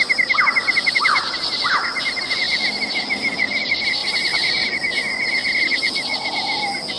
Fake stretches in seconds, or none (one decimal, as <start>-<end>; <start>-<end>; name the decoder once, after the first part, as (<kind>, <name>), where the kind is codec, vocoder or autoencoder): 0.6-1.7 (vocoder, BigVGAN v2); 4.0-5.1